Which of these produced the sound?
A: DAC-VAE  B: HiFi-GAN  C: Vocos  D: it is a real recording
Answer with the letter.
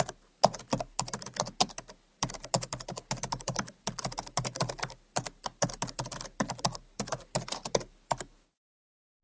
D